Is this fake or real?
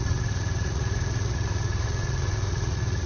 fake